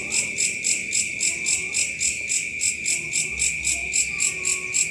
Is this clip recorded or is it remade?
recorded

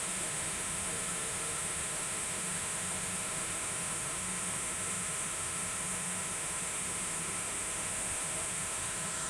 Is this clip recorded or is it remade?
remade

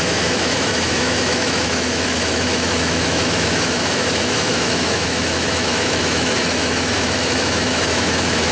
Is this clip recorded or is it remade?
remade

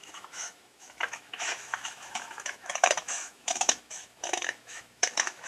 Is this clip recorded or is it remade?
remade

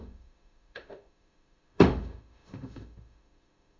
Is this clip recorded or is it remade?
remade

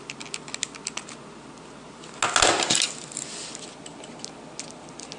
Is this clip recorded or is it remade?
recorded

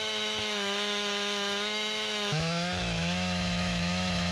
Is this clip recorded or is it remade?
remade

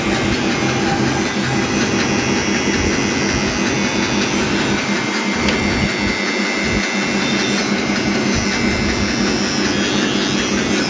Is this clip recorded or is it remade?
recorded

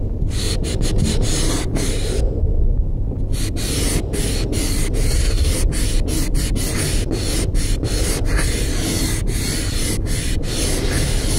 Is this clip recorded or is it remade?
recorded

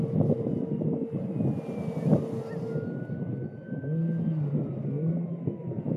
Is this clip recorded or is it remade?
recorded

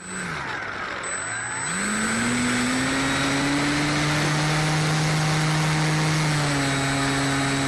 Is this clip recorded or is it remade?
recorded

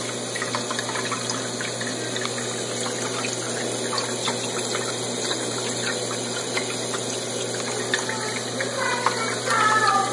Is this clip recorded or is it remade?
recorded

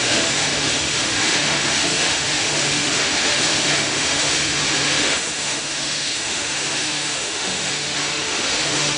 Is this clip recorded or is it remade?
remade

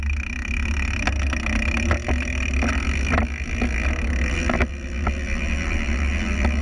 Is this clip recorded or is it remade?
recorded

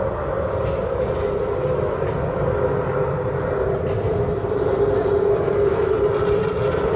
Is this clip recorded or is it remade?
recorded